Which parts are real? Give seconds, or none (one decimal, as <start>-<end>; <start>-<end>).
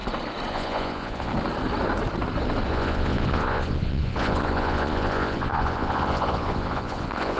0.0-0.5; 1.3-2.7